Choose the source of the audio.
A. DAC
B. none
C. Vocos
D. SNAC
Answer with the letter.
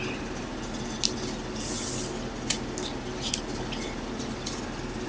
B